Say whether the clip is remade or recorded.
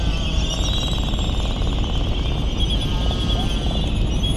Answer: recorded